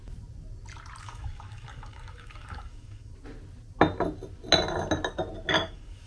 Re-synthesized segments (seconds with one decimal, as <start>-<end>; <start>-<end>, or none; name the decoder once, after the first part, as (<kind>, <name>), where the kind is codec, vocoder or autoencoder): 1.0-3.1 (codec, DAC); 5.5-6.1